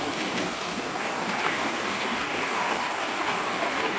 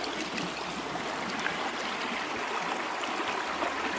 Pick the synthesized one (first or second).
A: first